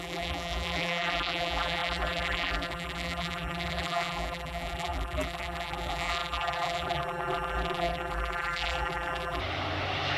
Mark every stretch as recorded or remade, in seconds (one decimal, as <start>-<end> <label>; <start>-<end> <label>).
0.0-9.4 remade; 9.4-10.2 recorded